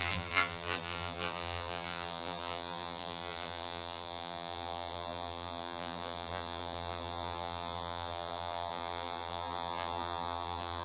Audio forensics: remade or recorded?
remade